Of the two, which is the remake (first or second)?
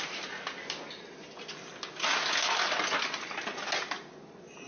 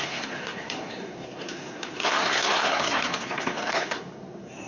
second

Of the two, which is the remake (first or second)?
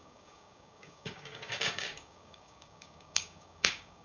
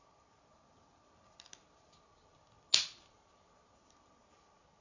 first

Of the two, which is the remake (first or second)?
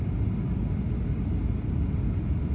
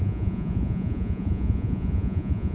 second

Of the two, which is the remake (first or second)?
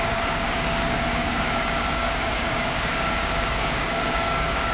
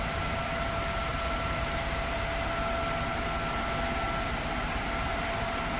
first